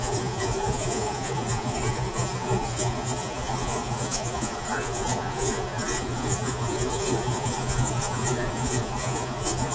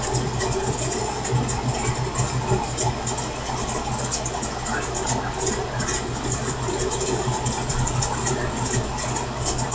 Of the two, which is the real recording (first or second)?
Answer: second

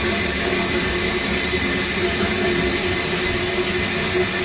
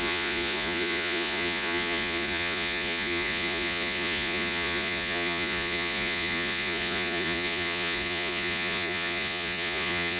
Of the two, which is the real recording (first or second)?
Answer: first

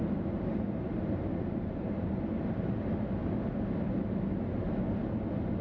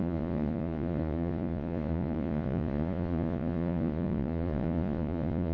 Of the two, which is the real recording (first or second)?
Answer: first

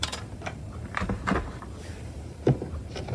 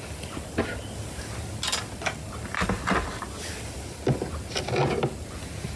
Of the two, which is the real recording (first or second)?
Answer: second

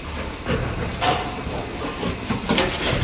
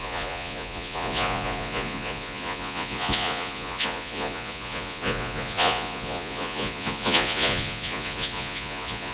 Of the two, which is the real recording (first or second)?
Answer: first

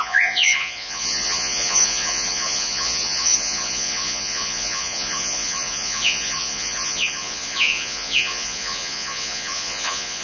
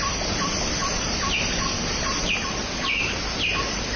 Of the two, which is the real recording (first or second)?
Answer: second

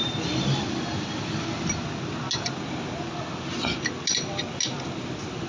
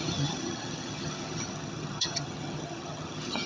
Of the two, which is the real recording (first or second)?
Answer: first